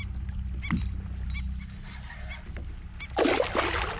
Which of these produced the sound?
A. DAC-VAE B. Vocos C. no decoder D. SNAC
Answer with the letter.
C